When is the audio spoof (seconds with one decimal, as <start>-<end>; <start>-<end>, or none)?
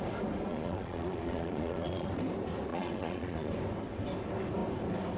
0.5-2.1; 2.7-3.5